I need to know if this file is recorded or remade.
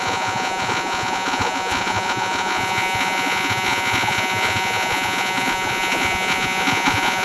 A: remade